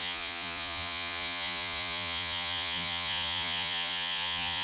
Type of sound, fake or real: fake